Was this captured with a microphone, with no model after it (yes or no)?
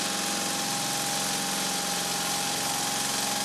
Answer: yes